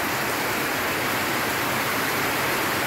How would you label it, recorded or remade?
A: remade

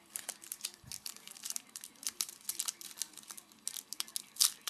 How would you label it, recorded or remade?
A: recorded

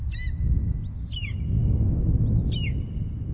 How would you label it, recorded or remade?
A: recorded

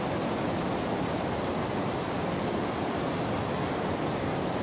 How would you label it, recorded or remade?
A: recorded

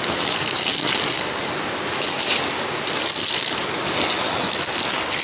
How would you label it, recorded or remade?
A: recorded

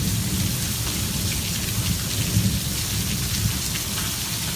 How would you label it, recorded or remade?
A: recorded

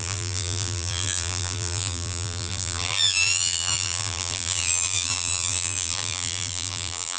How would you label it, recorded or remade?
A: remade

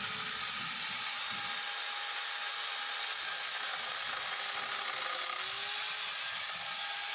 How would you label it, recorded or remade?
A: recorded